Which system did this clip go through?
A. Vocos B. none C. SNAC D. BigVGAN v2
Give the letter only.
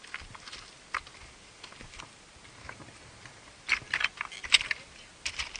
B